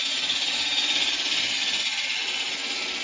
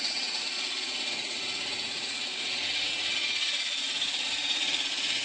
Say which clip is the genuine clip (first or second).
first